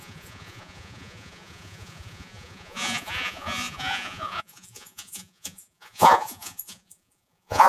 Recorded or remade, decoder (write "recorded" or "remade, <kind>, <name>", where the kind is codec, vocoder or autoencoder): remade, vocoder, Vocos